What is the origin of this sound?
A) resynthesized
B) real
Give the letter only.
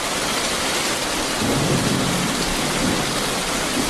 B